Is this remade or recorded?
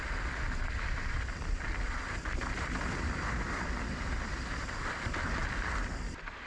remade